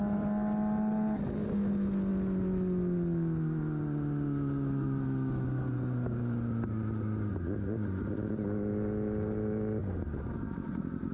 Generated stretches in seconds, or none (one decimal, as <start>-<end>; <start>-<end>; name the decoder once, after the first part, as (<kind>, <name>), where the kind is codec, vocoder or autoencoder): none